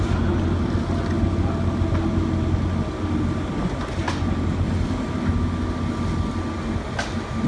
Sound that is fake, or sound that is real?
real